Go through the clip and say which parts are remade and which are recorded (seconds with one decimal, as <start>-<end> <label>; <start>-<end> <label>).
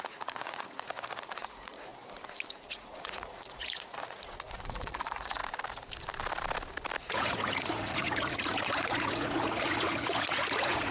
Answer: 0.0-1.9 remade; 1.9-2.5 recorded; 2.5-5.4 remade; 5.4-7.0 recorded; 7.0-10.9 remade